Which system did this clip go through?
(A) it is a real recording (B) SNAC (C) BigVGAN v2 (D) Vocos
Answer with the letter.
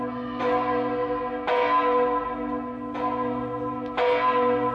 A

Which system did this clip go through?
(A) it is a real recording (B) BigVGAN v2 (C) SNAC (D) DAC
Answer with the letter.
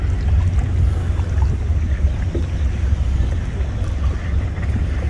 A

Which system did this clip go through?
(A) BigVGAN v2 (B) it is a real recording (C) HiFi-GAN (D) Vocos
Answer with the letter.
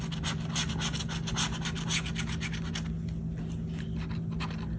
B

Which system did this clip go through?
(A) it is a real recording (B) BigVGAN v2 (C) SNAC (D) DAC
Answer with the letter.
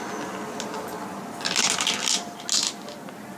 A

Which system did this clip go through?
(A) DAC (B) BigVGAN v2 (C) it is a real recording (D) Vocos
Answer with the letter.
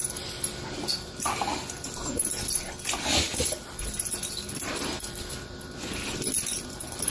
B